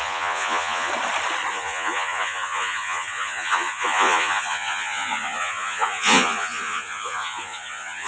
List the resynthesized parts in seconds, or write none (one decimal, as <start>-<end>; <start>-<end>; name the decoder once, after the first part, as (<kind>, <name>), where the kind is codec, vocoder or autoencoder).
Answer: 0.0-0.9 (vocoder, Vocos); 1.5-8.1